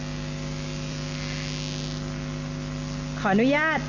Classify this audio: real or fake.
real